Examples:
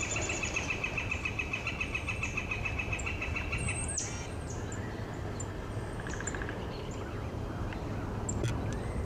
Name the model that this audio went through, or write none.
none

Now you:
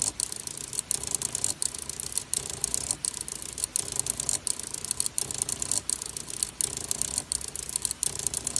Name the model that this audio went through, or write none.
none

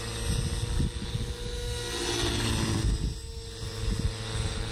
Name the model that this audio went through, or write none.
none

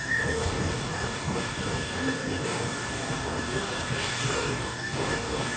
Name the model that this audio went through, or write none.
codec, DAC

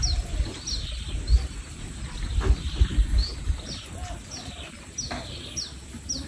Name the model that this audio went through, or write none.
none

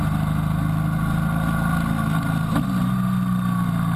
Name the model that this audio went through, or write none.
none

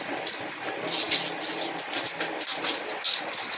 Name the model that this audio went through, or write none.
none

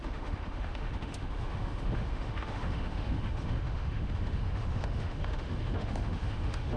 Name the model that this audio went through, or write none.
autoencoder, DAC-VAE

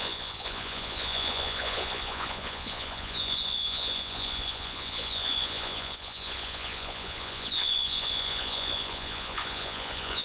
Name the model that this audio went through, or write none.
vocoder, Vocos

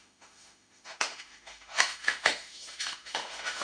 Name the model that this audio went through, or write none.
autoencoder, DAC-VAE